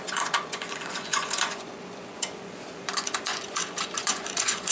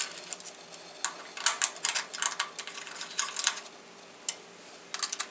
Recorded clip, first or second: second